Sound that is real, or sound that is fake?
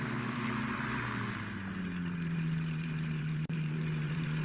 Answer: fake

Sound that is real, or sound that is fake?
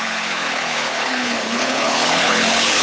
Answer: fake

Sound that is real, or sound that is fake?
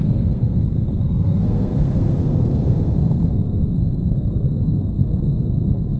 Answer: fake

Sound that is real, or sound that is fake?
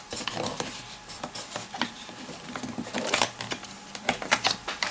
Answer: fake